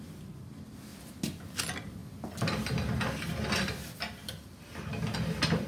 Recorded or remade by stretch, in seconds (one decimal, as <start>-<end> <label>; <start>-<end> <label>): 0.0-5.7 recorded